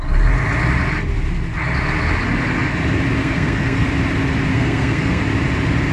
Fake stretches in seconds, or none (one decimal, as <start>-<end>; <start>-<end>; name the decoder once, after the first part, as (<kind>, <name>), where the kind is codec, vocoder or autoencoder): 3.2-3.9 (codec, SNAC); 4.5-5.2